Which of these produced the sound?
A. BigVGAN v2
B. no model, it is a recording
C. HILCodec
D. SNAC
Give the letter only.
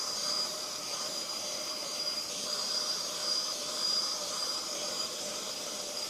A